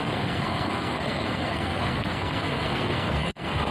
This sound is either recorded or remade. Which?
remade